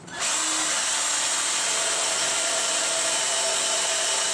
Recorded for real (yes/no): yes